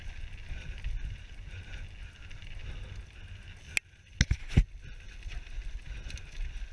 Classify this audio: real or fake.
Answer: real